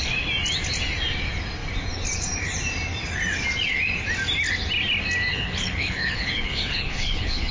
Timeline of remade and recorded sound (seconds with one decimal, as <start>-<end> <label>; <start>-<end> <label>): 0.0-5.3 recorded; 5.3-7.5 remade